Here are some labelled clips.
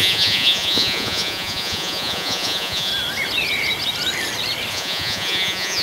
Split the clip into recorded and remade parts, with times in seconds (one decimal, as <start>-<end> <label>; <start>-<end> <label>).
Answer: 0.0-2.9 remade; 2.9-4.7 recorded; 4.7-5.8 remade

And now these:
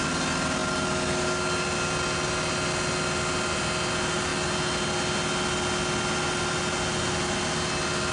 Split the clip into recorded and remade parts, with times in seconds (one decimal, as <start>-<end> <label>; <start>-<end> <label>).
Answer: 0.0-8.1 recorded

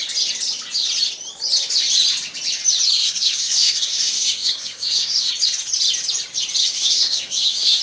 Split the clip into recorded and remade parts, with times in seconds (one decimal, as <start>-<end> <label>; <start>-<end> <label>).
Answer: 0.0-3.0 recorded; 3.0-5.3 remade; 5.3-6.6 recorded; 6.6-7.8 remade